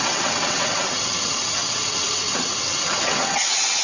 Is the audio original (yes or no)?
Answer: no